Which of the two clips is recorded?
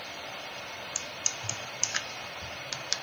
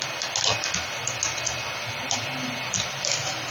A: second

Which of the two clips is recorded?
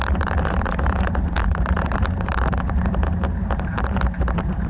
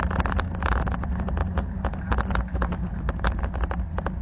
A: second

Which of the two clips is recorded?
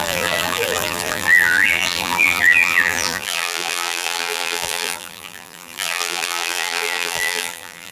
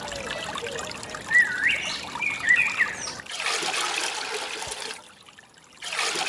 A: second